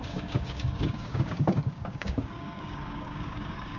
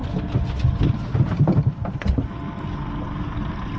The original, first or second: second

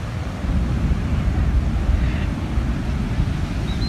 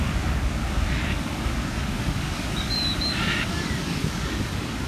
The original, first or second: first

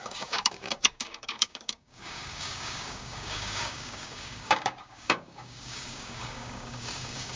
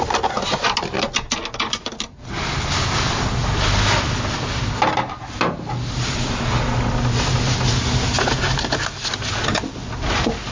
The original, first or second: second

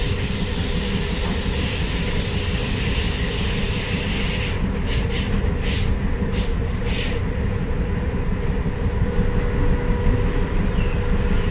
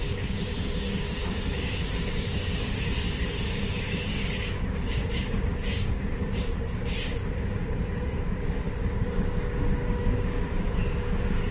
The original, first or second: first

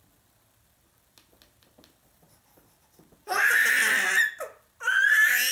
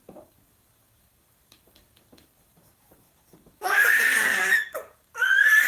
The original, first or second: first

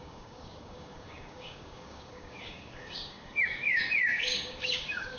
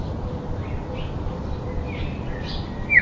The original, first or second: second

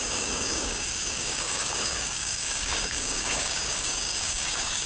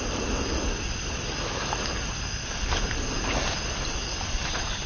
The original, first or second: second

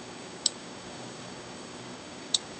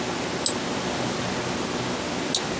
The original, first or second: second